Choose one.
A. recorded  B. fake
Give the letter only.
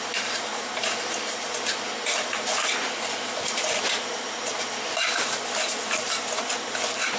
B